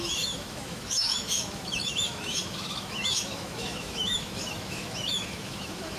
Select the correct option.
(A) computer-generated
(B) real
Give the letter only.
A